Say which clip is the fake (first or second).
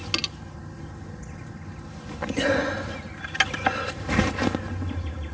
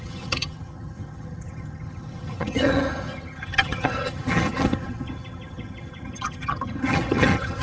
second